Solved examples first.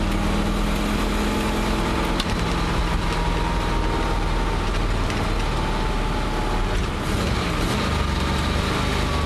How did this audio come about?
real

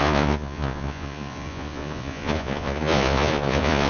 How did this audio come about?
fake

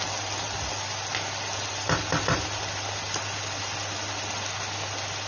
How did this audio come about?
real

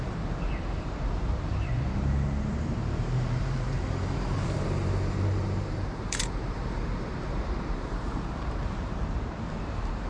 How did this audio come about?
fake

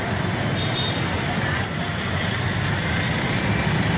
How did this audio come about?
real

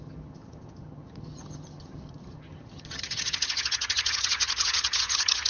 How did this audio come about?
fake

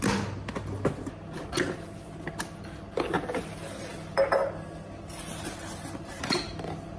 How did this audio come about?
real